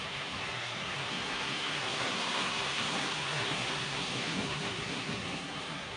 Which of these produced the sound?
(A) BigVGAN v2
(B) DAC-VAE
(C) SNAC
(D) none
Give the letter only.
C